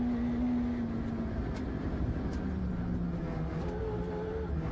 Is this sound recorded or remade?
recorded